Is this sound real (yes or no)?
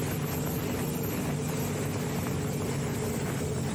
yes